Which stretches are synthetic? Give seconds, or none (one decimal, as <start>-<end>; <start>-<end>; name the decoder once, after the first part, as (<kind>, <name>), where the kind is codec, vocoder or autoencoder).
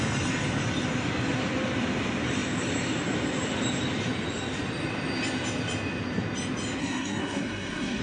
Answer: 6.8-8.0 (codec, SNAC)